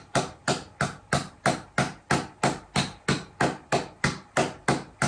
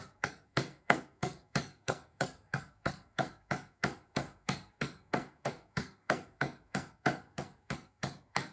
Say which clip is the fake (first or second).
second